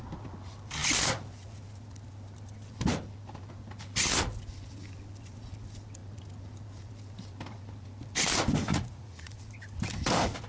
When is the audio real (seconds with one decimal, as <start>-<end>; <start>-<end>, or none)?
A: 0.0-8.7; 9.4-10.5